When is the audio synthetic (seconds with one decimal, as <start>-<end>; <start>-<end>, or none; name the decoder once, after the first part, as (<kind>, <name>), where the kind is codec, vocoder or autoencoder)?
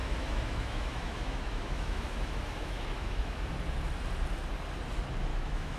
0.0-3.5 (autoencoder, DAC-VAE); 5.3-5.8